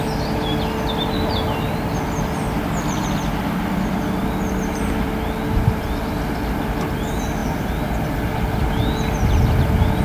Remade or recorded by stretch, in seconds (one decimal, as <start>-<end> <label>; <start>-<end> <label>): 0.0-10.0 recorded